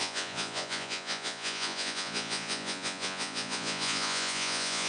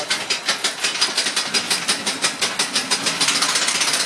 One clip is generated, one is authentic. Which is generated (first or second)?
first